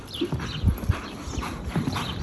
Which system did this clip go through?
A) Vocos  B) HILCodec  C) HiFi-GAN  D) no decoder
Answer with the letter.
D